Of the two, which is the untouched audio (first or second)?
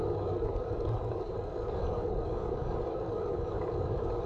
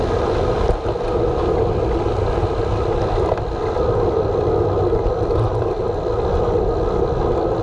second